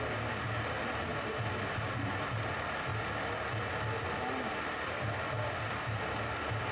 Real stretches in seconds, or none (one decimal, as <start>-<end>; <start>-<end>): 0.0-6.7